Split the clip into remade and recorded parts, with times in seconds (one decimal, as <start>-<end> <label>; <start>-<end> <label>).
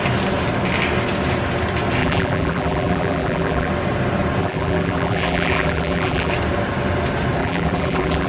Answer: 0.0-2.0 recorded; 2.0-3.7 remade; 3.7-4.4 recorded; 4.4-6.3 remade; 6.3-7.4 recorded; 7.4-8.3 remade